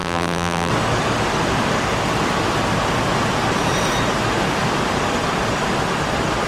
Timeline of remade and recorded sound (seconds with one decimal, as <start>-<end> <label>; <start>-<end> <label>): 0.0-0.7 remade; 0.7-6.5 recorded